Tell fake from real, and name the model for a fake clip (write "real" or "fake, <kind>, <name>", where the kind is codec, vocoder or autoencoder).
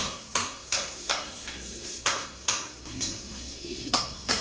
fake, codec, SNAC